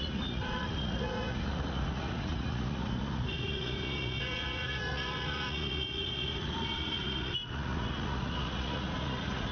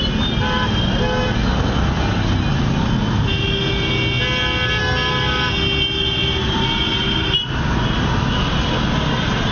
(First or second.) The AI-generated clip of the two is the first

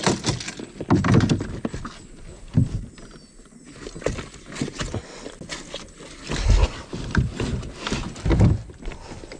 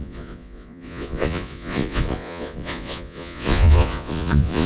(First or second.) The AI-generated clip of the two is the second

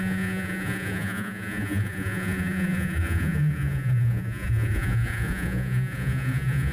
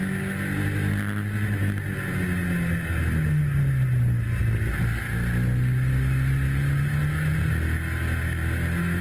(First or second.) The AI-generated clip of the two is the first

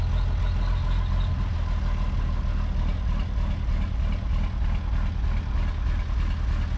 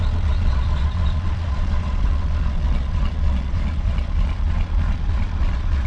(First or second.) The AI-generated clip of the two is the second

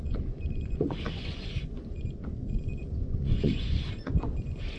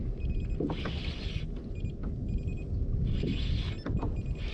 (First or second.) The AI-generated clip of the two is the first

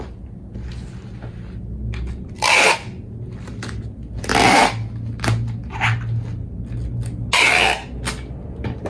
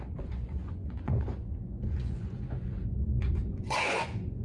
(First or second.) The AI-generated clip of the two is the second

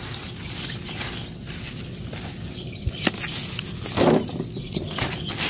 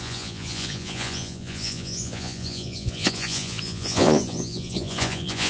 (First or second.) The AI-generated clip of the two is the second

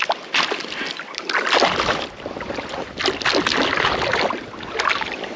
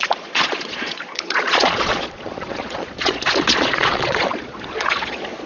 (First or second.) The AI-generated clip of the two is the second